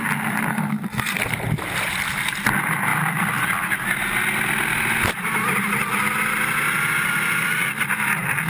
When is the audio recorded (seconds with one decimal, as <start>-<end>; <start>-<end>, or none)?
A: 0.0-0.5; 1.2-8.5